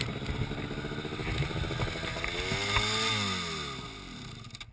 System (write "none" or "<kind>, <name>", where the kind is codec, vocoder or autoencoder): none